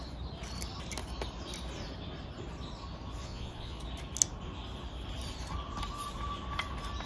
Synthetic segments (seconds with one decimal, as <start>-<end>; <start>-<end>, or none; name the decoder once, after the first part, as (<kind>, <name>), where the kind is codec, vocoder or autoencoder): 3.2-3.8 (vocoder, Vocos)